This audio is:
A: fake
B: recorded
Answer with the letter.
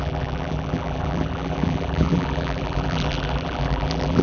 A